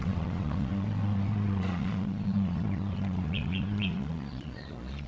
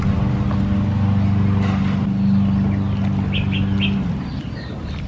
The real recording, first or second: second